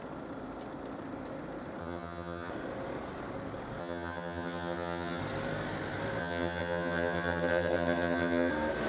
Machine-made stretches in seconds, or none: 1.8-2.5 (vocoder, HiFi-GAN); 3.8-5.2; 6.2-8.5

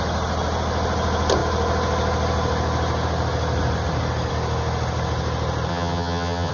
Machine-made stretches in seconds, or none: 5.7-6.5 (vocoder, HiFi-GAN)